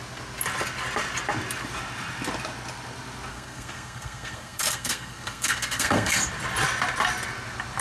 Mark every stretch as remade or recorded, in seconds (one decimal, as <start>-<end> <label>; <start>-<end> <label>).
0.0-3.3 recorded; 3.3-6.2 remade; 6.2-7.8 recorded